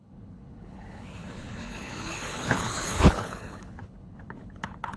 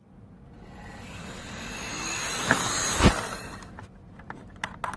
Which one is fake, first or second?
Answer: first